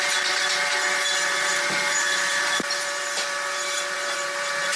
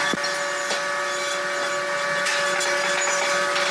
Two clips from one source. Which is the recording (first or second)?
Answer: second